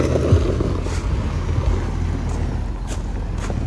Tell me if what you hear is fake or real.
real